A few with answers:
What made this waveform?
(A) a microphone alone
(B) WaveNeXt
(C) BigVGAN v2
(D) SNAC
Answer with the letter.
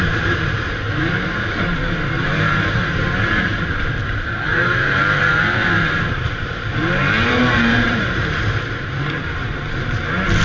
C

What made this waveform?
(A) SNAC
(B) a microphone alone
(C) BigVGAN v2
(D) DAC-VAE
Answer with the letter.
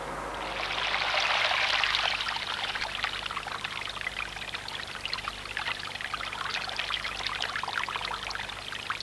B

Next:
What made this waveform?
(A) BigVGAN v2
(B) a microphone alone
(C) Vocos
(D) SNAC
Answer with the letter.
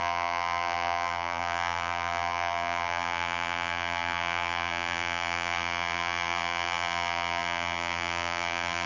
A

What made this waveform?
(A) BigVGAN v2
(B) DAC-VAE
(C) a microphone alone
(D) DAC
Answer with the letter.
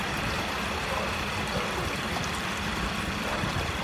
A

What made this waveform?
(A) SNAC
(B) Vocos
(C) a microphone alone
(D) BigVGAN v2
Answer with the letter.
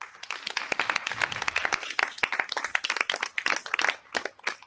C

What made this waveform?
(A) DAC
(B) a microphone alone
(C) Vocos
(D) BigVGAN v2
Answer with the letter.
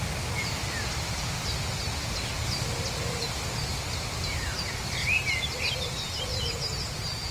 B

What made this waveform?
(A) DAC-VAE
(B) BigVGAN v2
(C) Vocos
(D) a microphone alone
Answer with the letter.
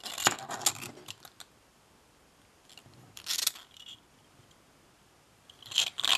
D